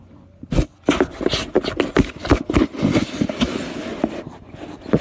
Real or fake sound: real